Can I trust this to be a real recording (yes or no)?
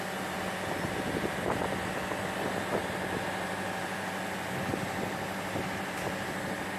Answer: yes